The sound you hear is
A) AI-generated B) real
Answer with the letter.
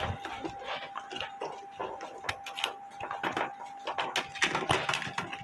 B